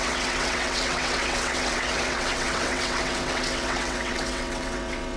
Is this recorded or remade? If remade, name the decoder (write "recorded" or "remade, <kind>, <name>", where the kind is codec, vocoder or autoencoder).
remade, vocoder, WaveNeXt